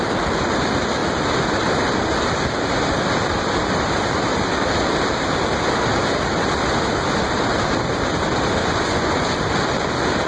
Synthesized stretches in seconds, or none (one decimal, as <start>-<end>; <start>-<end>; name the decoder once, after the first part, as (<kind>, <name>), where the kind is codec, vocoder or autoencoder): 8.6-9.4 (vocoder, Vocos)